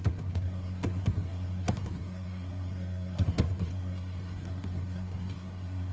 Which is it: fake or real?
fake